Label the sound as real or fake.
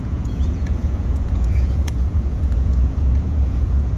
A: fake